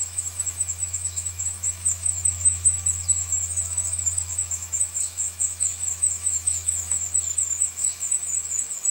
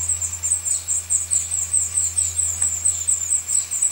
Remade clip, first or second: first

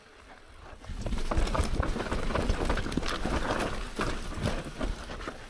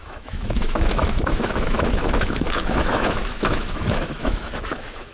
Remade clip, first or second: second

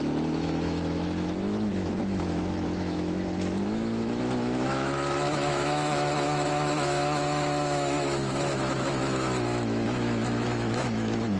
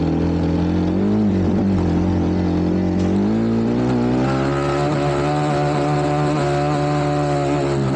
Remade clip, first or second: first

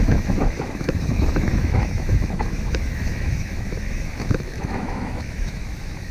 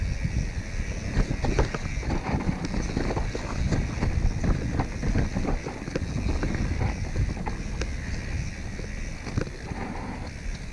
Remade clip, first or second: first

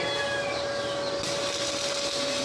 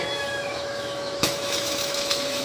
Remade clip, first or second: second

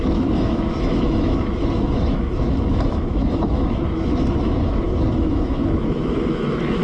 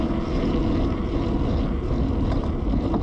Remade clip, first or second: first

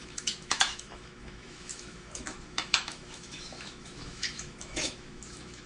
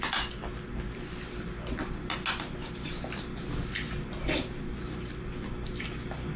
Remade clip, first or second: first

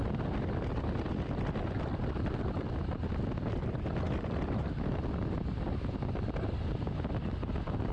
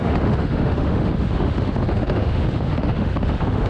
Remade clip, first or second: second